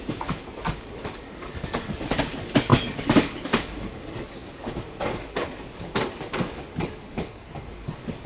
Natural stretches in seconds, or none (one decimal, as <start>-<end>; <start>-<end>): none